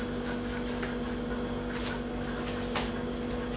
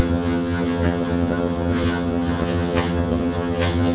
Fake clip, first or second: second